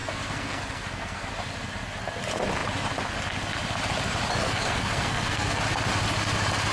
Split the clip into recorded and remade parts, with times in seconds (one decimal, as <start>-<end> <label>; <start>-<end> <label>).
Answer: 0.0-1.3 remade; 1.3-4.4 recorded; 4.4-5.6 remade; 5.6-6.7 recorded